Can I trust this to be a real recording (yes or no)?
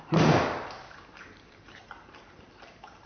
no